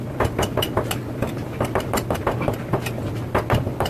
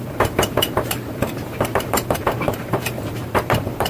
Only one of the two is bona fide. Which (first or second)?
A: first